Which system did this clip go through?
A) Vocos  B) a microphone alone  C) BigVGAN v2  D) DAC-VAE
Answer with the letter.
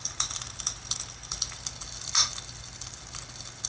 C